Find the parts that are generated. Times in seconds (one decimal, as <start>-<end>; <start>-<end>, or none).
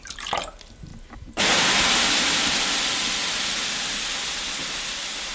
none